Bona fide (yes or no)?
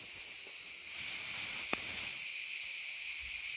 yes